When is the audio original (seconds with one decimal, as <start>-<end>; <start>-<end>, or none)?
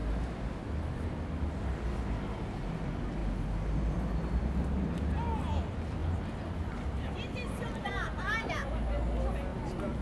0.0-6.0; 7.9-10.0